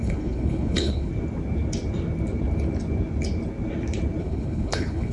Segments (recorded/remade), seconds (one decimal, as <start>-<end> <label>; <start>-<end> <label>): 0.0-1.1 remade; 1.1-4.2 recorded; 4.2-5.1 remade